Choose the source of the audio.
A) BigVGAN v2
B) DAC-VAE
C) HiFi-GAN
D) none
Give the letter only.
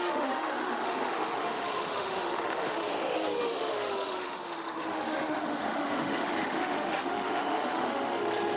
B